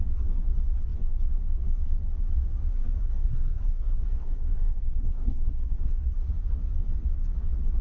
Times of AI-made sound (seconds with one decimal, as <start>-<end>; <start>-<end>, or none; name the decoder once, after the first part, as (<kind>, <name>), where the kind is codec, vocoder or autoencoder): 3.0-6.3 (codec, SNAC)